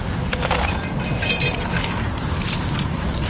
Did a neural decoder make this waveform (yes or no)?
yes